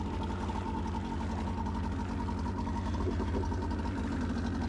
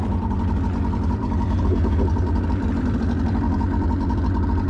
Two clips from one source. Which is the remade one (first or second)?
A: second